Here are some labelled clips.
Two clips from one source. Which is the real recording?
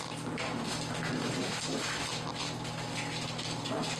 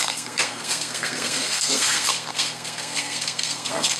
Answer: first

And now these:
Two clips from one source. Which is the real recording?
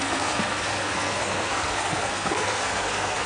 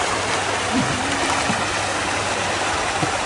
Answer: second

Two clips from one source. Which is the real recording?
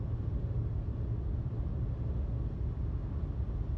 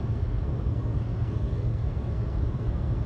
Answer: first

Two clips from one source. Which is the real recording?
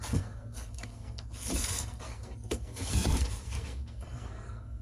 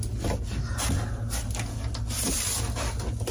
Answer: second